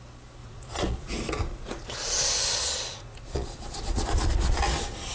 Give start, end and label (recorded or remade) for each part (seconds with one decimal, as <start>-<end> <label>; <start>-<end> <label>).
0.0-0.4 recorded; 0.4-1.1 remade; 1.1-1.5 recorded; 1.5-4.6 remade; 4.6-5.1 recorded